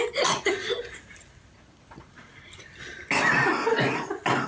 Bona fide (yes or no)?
yes